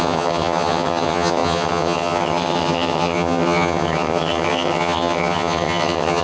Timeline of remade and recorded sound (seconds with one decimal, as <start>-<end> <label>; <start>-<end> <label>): 0.0-6.2 remade